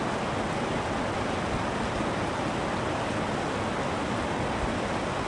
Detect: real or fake real